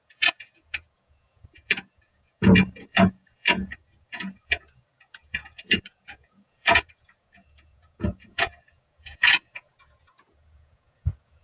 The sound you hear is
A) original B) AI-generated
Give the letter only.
B